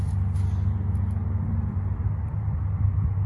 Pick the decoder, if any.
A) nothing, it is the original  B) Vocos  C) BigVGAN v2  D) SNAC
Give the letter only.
A